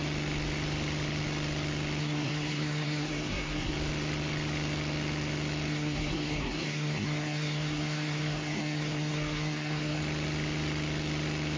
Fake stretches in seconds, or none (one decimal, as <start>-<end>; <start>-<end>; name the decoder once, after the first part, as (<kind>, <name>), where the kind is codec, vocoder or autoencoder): 2.0-3.7 (codec, SNAC); 5.7-10.0